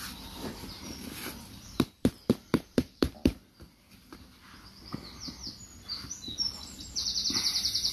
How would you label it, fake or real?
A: fake